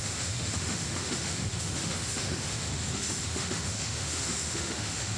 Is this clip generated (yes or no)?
yes